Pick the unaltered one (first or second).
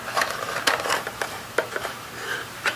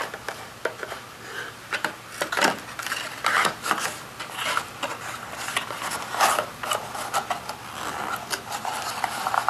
second